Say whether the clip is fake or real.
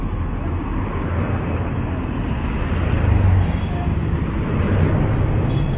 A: real